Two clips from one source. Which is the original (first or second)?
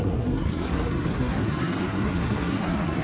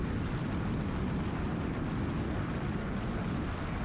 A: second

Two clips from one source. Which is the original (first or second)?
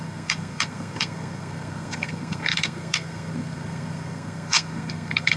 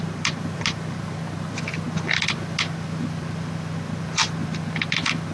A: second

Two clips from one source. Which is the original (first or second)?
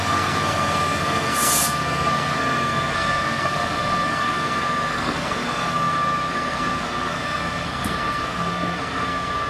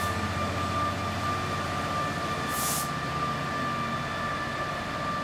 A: second